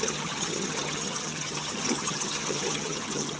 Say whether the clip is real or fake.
fake